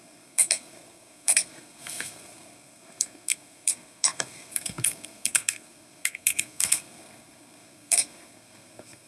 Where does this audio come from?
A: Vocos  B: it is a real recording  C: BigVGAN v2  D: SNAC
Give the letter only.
D